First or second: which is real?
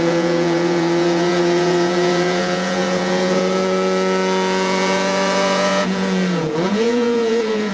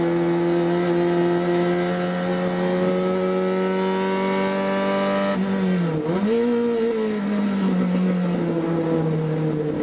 second